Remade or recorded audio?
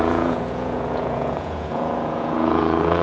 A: remade